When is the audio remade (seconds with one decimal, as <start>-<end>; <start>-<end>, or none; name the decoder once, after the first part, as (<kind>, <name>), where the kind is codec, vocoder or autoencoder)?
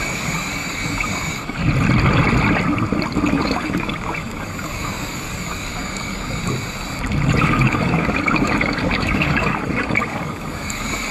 0.0-1.6 (codec, DAC); 3.3-6.4; 7.4-11.1